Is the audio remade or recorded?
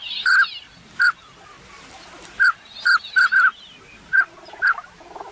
remade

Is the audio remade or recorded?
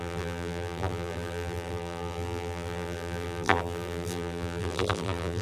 remade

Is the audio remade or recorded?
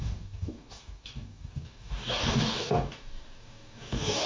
remade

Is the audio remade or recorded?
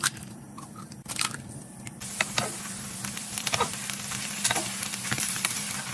remade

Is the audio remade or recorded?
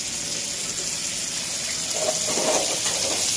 recorded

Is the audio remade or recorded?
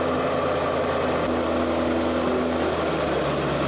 recorded